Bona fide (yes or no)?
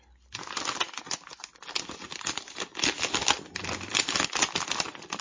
yes